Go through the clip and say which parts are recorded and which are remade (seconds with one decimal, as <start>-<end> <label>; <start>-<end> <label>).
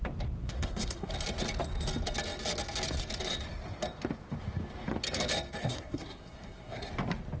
0.0-0.4 recorded; 0.4-1.1 remade; 1.1-5.6 recorded; 5.6-6.9 remade; 6.9-7.4 recorded